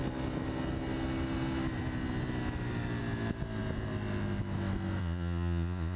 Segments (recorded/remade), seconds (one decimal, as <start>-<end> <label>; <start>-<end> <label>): 0.0-5.0 recorded; 5.0-6.0 remade